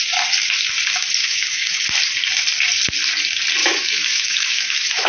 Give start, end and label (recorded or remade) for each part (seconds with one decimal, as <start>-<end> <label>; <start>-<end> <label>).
0.0-1.2 recorded; 1.2-1.8 remade; 1.8-3.6 recorded; 3.6-5.1 remade